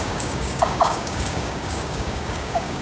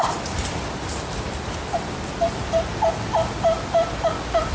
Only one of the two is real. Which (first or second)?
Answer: second